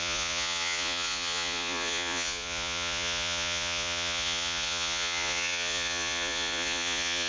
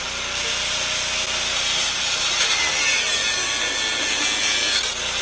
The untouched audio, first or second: second